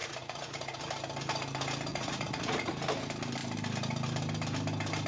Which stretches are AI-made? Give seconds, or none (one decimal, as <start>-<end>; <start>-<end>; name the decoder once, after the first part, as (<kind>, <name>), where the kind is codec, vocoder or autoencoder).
0.0-0.8 (vocoder, Vocos); 1.9-2.7